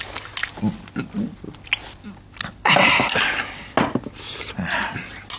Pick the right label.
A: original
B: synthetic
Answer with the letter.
A